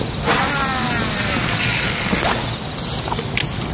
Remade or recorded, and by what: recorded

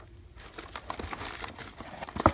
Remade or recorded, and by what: recorded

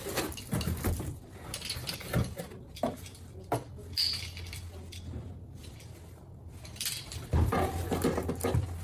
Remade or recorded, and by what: recorded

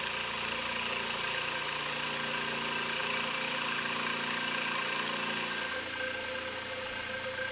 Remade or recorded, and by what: recorded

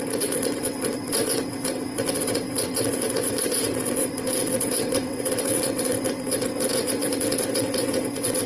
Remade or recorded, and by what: remade, vocoder, WaveNeXt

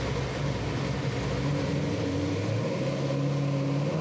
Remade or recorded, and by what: recorded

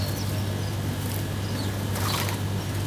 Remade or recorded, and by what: recorded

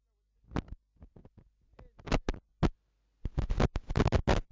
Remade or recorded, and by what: recorded